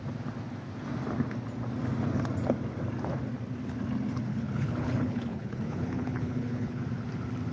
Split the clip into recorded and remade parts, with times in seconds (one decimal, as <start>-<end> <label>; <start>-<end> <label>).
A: 0.0-4.3 recorded; 4.3-6.8 remade; 6.8-7.5 recorded